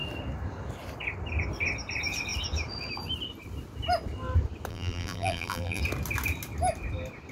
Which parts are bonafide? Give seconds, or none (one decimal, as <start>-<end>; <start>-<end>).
0.0-4.7; 5.8-7.3